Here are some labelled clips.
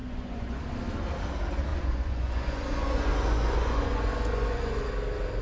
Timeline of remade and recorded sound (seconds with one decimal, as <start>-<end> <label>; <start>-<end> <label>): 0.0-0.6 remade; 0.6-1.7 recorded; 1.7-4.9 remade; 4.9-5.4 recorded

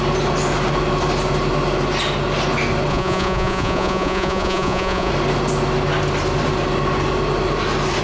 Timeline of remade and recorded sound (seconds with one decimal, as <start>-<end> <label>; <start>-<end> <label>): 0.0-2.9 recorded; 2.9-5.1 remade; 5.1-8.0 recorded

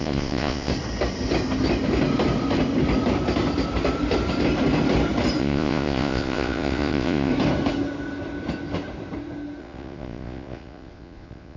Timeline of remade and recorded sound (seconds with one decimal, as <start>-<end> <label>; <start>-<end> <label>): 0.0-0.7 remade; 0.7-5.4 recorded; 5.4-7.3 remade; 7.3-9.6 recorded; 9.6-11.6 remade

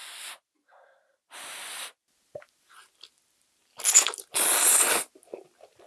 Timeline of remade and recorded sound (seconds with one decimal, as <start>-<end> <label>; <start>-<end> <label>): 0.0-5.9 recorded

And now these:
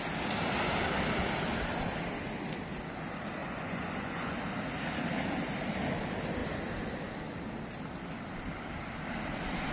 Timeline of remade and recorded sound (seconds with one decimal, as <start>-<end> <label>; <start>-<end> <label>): 0.0-3.4 recorded; 3.4-4.4 remade; 4.4-9.7 recorded